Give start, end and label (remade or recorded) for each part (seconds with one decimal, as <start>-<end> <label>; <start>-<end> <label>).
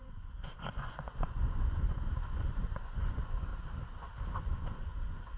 0.0-3.5 remade; 3.5-4.3 recorded; 4.3-5.4 remade